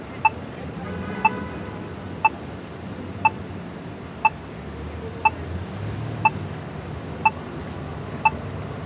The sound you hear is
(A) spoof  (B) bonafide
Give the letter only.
B